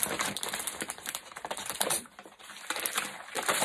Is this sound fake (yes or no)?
yes